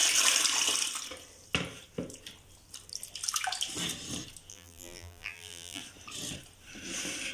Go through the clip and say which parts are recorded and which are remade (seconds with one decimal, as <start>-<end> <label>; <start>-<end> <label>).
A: 0.0-4.5 recorded; 4.5-5.8 remade; 5.8-7.3 recorded